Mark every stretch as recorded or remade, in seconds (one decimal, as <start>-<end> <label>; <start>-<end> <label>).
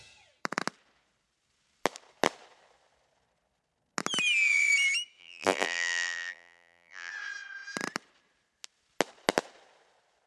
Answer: 0.0-5.2 recorded; 5.2-7.1 remade; 7.1-10.3 recorded